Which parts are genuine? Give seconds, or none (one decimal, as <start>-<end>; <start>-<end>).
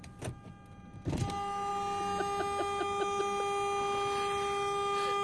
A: 0.0-5.2